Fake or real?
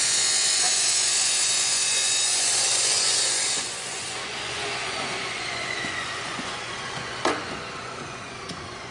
fake